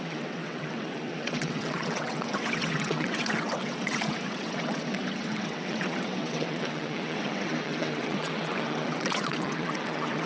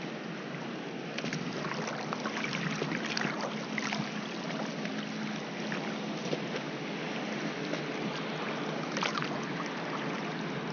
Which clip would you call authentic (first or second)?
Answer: second